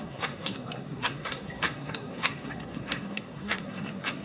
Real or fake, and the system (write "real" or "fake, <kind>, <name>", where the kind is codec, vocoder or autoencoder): fake, codec, SNAC